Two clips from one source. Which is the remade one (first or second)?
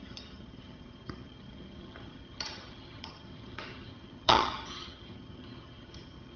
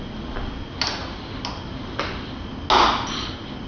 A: first